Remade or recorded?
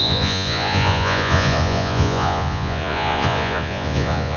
remade